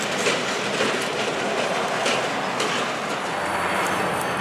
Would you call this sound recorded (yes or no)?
yes